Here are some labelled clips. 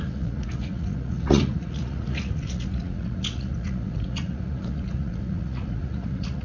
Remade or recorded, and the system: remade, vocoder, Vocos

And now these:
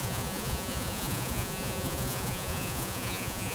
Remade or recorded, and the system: remade, vocoder, Vocos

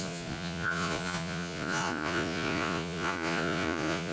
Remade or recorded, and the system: remade, vocoder, Vocos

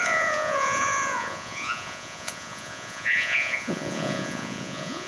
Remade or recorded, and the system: remade, vocoder, Vocos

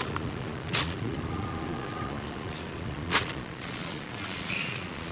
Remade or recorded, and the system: remade, vocoder, Vocos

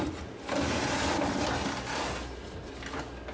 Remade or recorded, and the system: recorded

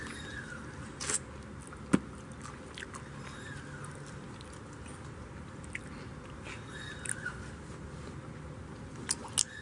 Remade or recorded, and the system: recorded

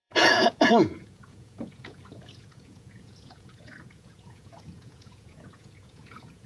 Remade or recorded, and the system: remade, vocoder, Vocos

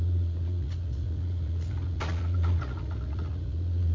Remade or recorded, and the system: remade, vocoder, Vocos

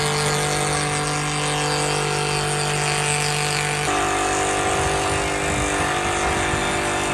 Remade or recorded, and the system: recorded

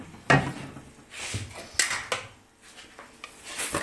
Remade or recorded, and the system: recorded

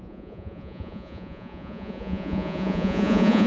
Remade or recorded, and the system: remade, vocoder, Vocos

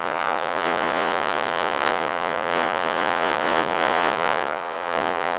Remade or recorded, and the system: remade, vocoder, Vocos